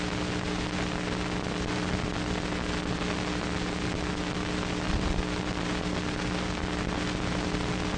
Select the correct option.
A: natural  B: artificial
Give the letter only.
A